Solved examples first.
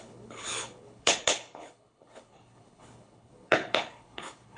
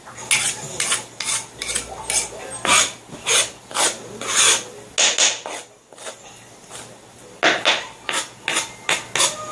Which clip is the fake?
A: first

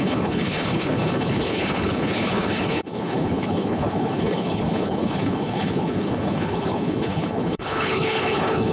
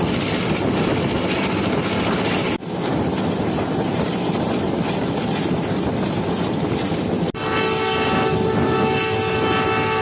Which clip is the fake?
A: first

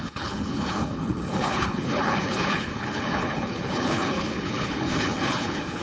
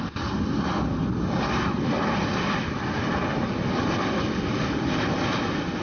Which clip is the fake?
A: first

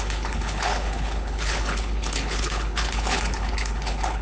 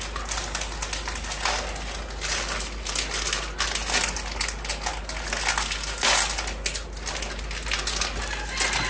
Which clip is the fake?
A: first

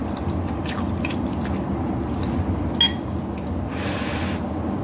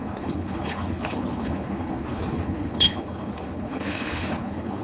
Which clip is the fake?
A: second